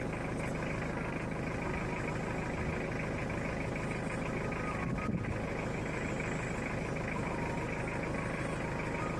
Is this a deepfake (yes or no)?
no